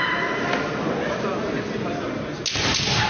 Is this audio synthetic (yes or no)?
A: no